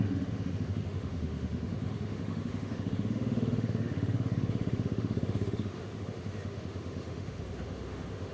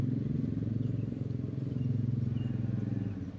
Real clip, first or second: second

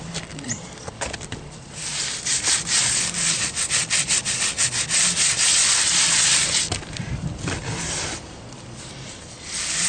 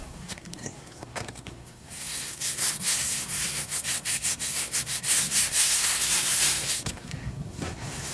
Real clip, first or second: first